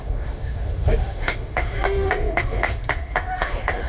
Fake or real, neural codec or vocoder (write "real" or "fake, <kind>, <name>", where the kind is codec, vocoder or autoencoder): fake, autoencoder, DAC-VAE